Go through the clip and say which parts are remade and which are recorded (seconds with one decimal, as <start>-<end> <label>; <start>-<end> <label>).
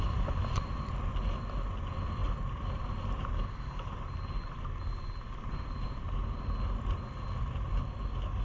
0.0-8.4 recorded